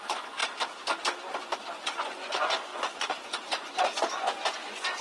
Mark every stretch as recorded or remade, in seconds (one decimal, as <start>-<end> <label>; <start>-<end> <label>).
0.0-0.4 remade; 0.4-1.8 recorded; 1.8-5.0 remade